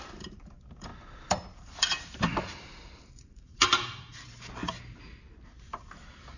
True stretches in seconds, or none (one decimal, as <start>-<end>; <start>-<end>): 4.6-5.6